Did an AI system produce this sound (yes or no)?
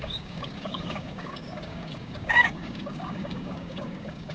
yes